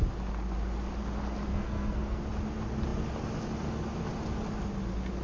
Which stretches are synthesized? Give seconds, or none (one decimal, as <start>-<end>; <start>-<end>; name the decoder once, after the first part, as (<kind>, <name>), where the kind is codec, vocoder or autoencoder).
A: 1.5-2.2 (codec, SNAC)